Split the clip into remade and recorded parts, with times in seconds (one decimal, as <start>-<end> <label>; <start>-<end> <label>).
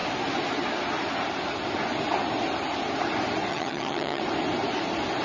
0.0-3.5 recorded; 3.5-4.2 remade; 4.2-5.2 recorded